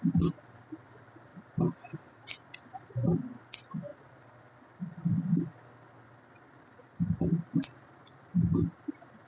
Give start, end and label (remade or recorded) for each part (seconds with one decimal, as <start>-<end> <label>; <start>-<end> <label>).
0.0-9.3 recorded